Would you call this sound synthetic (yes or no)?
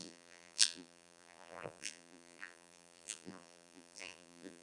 yes